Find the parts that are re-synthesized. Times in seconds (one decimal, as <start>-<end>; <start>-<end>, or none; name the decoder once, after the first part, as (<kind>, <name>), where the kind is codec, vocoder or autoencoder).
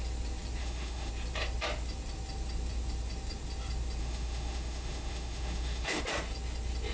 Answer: 0.6-1.1 (autoencoder, DAC-VAE); 4.0-6.0